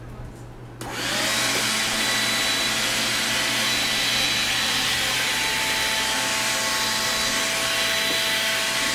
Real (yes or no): yes